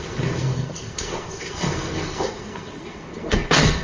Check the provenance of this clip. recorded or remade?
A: remade